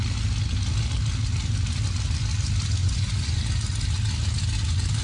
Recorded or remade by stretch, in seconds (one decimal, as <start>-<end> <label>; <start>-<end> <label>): 0.0-2.8 recorded; 2.8-3.4 remade; 3.4-5.0 recorded